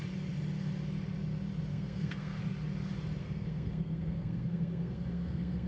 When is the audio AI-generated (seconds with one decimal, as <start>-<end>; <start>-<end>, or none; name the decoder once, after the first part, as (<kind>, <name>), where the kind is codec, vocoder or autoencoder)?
1.7-2.4 (codec, SNAC); 3.2-5.7